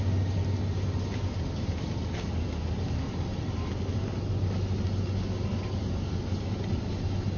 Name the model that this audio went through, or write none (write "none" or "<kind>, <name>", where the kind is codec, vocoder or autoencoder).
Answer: none